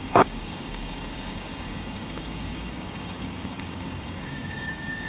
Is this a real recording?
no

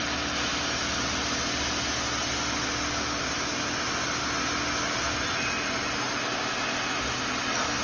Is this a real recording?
yes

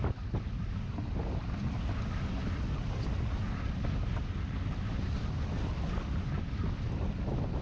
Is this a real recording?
yes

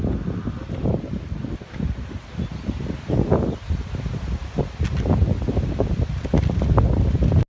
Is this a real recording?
yes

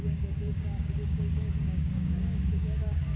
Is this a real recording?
no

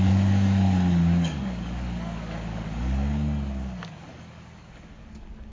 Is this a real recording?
no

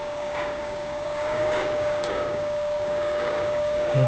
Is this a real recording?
no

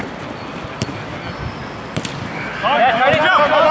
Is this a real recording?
yes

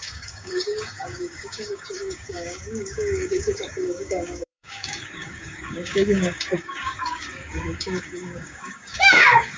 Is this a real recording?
no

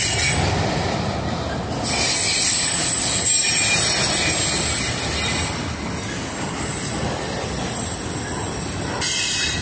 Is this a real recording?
yes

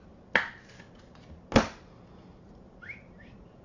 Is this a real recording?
yes